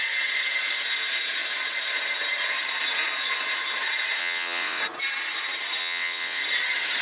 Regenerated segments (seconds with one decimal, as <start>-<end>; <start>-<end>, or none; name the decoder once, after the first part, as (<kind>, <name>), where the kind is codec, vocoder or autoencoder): 4.2-4.8 (vocoder, WaveNeXt); 5.8-6.4